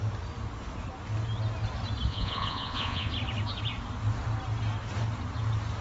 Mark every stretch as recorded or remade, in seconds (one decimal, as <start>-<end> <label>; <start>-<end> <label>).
0.0-2.1 recorded; 2.1-3.1 remade; 3.1-5.8 recorded